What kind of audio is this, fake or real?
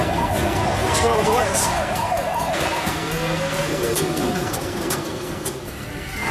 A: fake